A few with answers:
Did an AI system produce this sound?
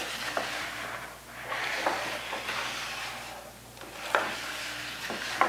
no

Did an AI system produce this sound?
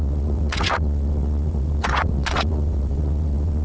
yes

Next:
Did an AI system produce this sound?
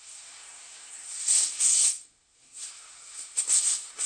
yes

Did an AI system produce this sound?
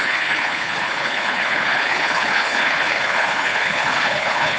yes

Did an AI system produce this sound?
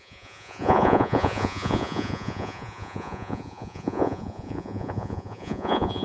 yes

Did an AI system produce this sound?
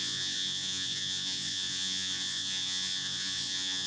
yes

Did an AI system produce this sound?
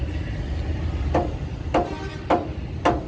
no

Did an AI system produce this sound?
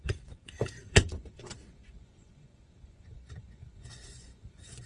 yes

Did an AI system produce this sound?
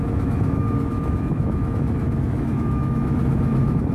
yes